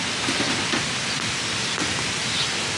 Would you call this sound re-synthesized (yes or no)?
yes